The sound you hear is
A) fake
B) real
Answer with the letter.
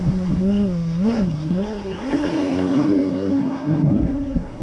A